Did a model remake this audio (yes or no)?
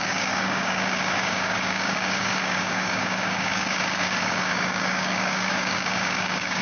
yes